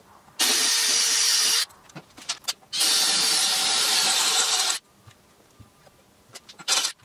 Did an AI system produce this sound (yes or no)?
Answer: yes